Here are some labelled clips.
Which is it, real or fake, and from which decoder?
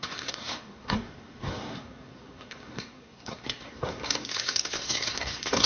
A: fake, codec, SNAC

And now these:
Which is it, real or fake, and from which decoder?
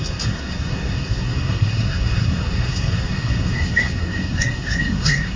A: fake, codec, SNAC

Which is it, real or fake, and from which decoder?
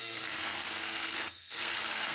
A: fake, codec, SNAC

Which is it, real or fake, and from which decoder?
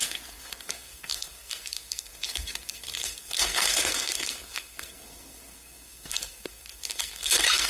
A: fake, codec, SNAC